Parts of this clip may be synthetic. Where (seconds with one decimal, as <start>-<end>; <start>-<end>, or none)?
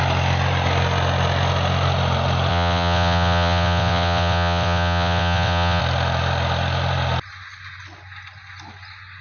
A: 2.5-5.8